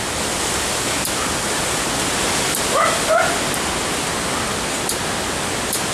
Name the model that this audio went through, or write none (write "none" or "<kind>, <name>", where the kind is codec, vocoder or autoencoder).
none